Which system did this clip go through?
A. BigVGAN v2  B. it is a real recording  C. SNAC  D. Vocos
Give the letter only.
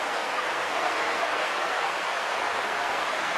C